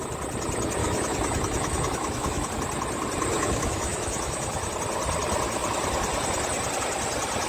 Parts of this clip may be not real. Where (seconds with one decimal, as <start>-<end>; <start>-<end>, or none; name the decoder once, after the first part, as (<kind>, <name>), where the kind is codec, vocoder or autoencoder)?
0.8-2.5 (autoencoder, DAC-VAE); 3.3-4.7